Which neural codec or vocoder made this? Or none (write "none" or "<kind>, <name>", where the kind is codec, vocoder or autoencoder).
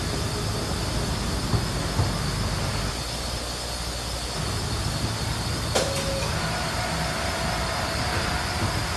none